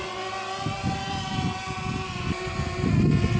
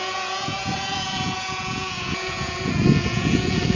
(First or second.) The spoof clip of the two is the second